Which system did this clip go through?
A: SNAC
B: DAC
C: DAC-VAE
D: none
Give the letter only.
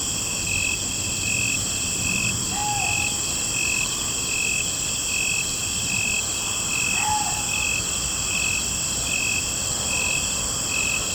D